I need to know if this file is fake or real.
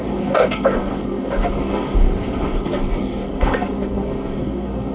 fake